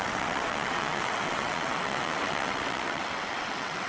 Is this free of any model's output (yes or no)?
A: no